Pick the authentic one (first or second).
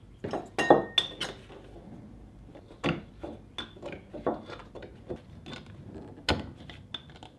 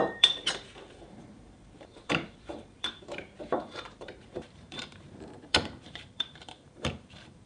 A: first